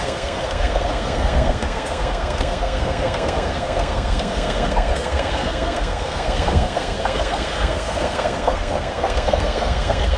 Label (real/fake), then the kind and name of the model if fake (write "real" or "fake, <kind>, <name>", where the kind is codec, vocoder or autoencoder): fake, codec, SNAC